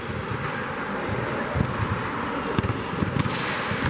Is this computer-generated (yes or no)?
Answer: no